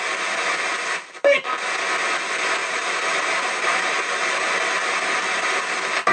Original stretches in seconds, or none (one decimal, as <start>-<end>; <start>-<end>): 0.0-2.6; 4.2-4.8; 5.6-6.1